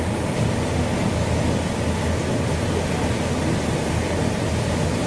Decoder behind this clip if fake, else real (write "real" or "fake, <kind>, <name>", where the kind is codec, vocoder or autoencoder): real